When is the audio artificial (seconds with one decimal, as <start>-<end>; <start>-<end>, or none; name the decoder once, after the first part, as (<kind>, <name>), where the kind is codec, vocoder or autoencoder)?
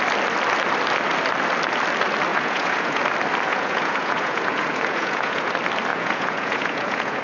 2.3-3.0 (vocoder, Vocos); 3.5-5.5; 5.9-7.2